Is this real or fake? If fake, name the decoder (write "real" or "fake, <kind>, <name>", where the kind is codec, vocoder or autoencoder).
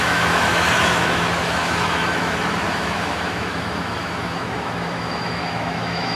fake, autoencoder, DAC-VAE